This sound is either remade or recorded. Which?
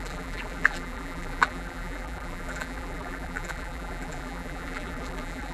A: remade